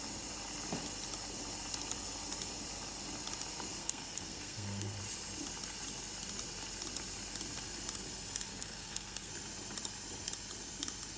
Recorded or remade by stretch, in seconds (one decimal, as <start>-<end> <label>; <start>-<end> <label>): 0.0-3.8 recorded; 3.8-5.0 remade; 5.0-8.5 recorded; 8.5-9.3 remade; 9.3-11.2 recorded